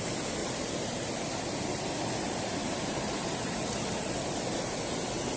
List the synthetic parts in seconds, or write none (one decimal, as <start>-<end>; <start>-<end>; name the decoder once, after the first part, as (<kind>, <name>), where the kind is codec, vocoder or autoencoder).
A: 0.4-1.1 (vocoder, BigVGAN v2); 2.6-3.8